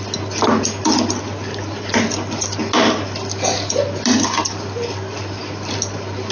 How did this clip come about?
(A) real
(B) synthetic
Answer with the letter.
A